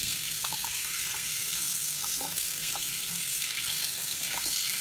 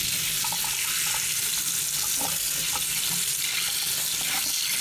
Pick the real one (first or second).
second